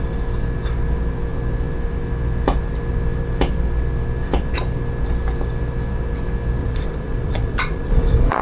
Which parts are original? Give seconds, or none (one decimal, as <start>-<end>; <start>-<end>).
0.0-6.6